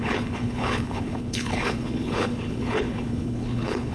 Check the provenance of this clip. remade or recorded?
remade